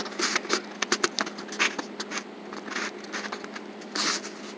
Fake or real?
real